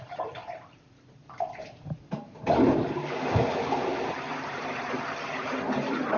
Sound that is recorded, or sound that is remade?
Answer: remade